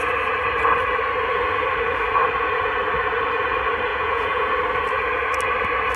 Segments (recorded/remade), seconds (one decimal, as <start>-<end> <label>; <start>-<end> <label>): 0.0-3.9 recorded; 3.9-4.5 remade; 4.5-6.0 recorded